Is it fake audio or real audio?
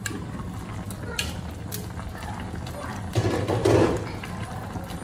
real